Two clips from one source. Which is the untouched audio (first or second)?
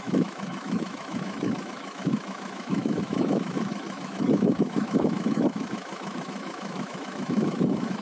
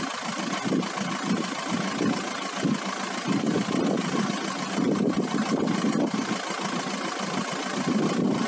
second